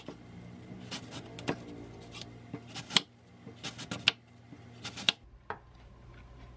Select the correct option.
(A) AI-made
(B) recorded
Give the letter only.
B